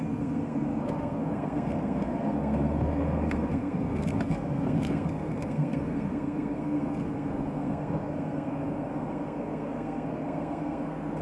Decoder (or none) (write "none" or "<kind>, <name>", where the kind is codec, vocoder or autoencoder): codec, SNAC